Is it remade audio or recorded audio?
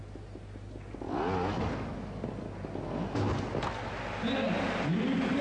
recorded